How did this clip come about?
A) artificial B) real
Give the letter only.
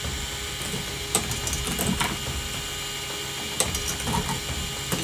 B